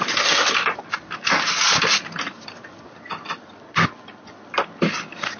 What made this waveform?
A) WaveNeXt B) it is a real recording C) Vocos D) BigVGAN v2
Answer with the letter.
B